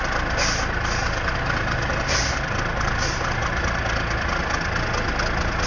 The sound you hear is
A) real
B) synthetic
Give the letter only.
A